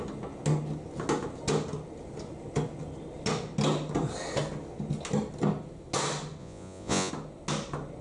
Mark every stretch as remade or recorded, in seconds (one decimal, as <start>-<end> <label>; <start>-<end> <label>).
0.0-6.4 recorded; 6.4-7.1 remade; 7.1-8.0 recorded